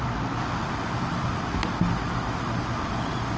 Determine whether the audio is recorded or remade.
recorded